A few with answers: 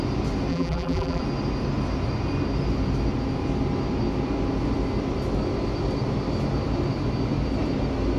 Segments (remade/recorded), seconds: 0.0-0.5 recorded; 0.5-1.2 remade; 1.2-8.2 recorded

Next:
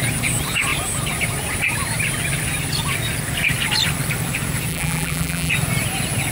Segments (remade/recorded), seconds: 0.0-4.7 recorded; 4.7-5.5 remade; 5.5-6.3 recorded

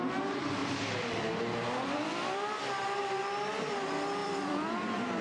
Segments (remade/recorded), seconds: 0.0-0.6 recorded; 0.6-3.0 remade; 3.0-4.2 recorded; 4.2-5.2 remade

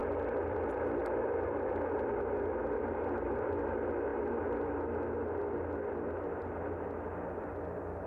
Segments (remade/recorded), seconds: 0.0-0.6 remade; 0.6-1.0 recorded; 1.0-1.7 remade; 1.7-8.1 recorded

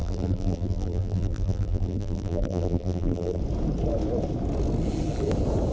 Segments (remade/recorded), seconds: 0.0-3.4 remade; 3.4-5.7 recorded

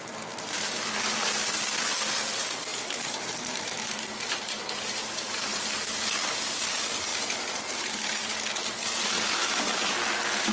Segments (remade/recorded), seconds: 0.0-2.7 recorded; 2.7-5.9 remade; 5.9-7.1 recorded; 7.1-8.3 remade; 8.3-10.5 recorded

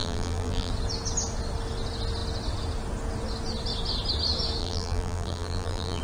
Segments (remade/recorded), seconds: 0.0-0.7 remade; 0.7-4.6 recorded; 4.6-6.0 remade